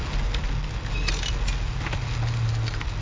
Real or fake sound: real